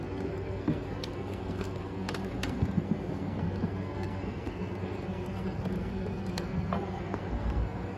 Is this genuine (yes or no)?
no